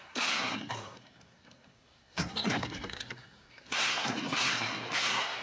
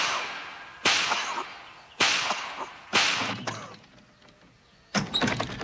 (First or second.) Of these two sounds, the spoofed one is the first